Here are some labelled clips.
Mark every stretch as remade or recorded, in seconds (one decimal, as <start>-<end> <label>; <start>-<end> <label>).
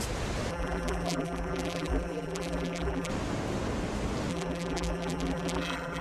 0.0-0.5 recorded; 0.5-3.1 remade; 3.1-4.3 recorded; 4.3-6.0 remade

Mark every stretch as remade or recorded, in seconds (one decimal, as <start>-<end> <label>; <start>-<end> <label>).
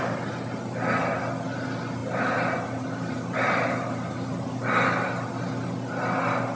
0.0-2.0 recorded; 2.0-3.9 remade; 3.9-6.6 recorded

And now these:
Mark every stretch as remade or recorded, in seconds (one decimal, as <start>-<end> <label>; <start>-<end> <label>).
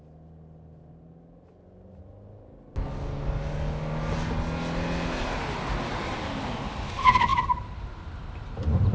0.0-8.9 recorded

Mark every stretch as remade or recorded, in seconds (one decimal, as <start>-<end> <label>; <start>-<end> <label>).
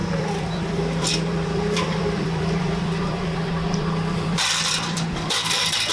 0.0-5.9 remade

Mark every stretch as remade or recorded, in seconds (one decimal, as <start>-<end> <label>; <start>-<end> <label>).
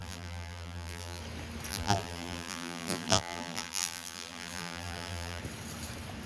0.0-1.2 remade; 1.2-1.7 recorded; 1.7-5.4 remade; 5.4-6.3 recorded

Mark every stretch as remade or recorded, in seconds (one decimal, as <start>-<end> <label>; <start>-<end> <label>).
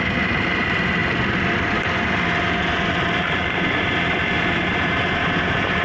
0.0-1.0 remade; 1.0-1.7 recorded; 1.7-5.8 remade